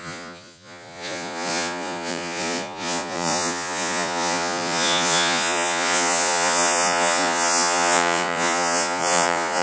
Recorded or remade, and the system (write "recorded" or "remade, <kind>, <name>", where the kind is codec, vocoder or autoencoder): remade, vocoder, Vocos